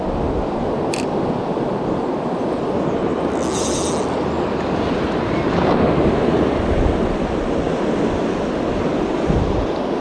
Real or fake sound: real